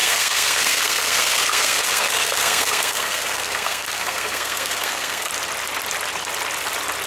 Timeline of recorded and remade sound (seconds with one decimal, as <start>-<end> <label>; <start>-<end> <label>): 0.0-5.3 remade; 5.3-7.1 recorded